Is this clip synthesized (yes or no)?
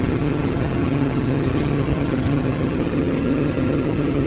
yes